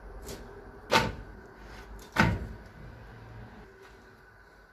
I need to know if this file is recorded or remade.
recorded